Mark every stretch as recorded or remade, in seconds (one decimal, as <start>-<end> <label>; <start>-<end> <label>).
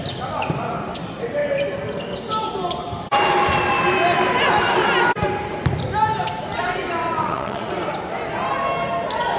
0.0-7.0 recorded; 7.0-7.7 remade; 7.7-9.4 recorded